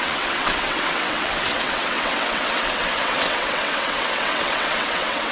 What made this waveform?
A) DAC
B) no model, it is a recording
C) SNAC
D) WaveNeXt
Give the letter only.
D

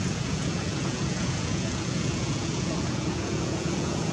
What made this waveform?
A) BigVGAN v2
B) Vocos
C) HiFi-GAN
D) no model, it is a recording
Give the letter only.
B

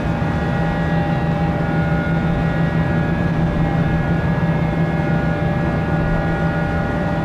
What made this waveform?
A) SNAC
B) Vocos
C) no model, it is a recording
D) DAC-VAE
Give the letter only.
C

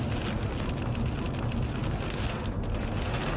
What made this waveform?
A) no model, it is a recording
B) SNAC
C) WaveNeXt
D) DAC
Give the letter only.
A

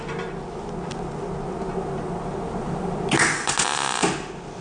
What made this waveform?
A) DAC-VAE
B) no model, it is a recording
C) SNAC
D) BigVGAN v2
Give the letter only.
B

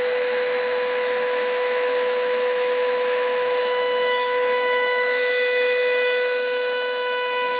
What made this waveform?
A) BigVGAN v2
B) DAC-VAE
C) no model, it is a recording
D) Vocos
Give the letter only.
B